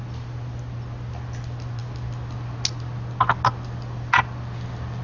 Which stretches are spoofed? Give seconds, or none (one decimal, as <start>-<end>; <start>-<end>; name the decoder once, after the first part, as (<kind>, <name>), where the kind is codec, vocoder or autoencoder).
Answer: none